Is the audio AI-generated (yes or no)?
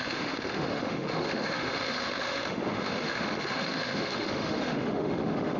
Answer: yes